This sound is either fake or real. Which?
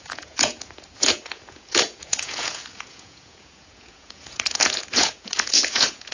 fake